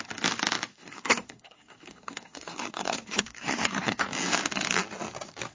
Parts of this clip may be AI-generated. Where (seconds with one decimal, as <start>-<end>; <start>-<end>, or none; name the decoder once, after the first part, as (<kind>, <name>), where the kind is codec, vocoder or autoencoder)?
0.7-4.0 (codec, SNAC)